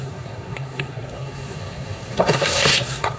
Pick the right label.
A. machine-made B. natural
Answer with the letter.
A